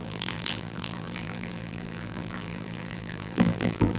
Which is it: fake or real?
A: fake